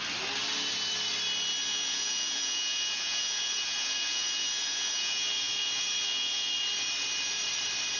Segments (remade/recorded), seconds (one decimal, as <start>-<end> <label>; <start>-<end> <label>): 0.0-1.7 recorded; 1.7-6.5 remade; 6.5-8.0 recorded